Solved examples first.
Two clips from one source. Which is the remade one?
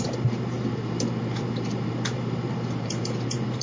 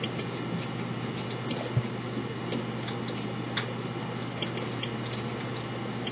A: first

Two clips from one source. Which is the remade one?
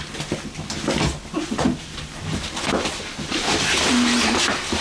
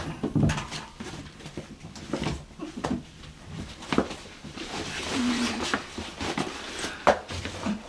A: second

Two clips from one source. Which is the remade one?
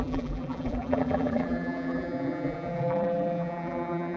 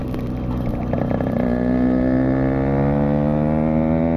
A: first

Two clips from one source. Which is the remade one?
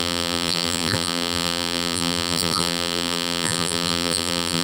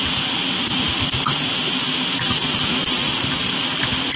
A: first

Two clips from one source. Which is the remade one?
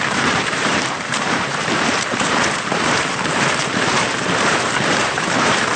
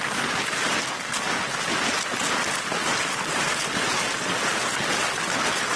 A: first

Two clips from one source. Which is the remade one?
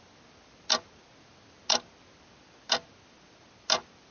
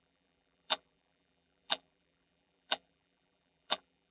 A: second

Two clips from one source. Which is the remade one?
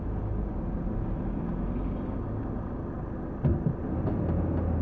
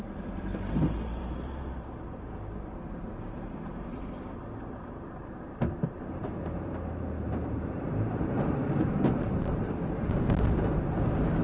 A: second